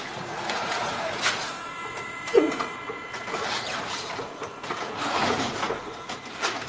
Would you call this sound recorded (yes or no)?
no